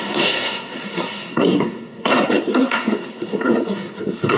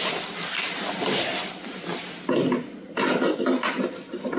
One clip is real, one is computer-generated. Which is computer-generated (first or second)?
first